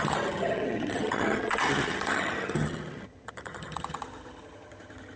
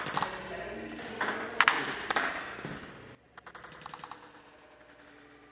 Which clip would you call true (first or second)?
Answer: second